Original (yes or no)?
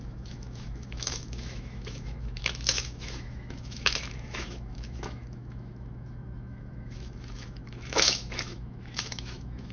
no